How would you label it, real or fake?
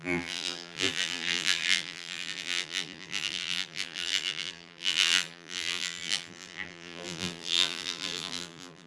fake